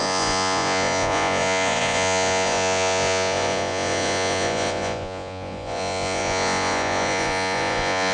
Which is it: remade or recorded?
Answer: remade